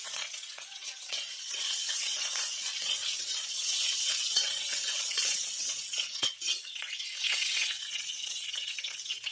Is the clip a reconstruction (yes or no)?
yes